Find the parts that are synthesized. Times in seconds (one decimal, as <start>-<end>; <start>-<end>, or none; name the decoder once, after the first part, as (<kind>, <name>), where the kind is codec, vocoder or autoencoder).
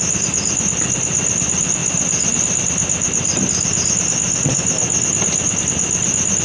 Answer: none